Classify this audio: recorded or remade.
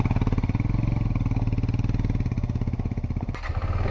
recorded